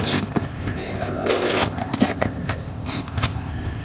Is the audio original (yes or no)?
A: no